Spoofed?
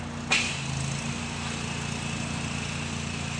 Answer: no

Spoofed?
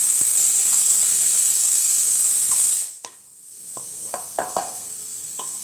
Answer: yes